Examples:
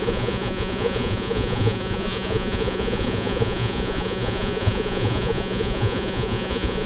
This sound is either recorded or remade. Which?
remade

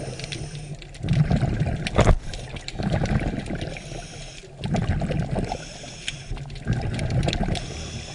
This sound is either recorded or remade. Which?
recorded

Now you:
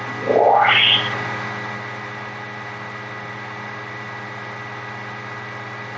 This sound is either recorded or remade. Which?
recorded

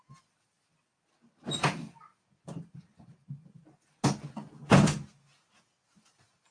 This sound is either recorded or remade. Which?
recorded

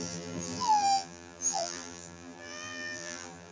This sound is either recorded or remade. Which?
remade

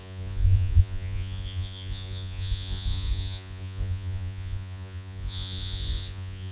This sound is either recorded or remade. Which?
remade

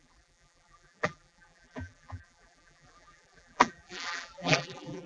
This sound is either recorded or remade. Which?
remade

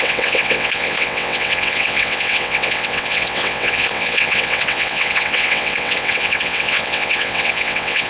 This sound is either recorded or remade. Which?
remade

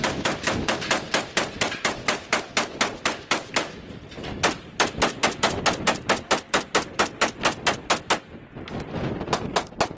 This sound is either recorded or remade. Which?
recorded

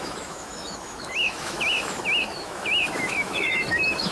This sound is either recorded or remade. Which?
remade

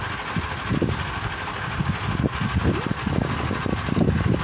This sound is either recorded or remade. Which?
recorded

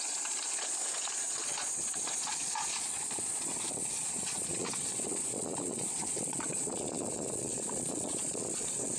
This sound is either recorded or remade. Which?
remade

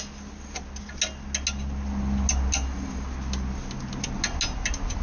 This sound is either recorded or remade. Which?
recorded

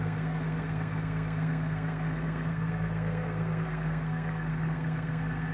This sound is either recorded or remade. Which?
remade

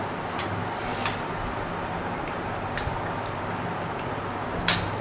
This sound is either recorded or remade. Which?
recorded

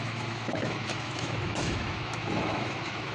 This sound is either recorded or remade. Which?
remade